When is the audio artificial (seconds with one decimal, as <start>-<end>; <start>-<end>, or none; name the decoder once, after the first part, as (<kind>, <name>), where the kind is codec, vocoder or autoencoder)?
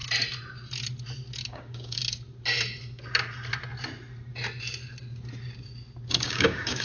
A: 1.5-2.0 (codec, DAC); 6.1-6.8